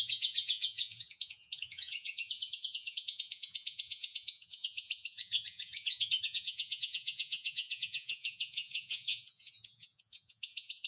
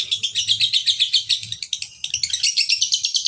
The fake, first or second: first